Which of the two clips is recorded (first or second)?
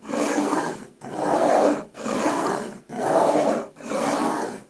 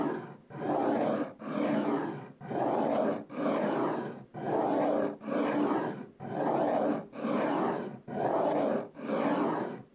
second